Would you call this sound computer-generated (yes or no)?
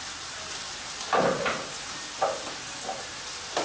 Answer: no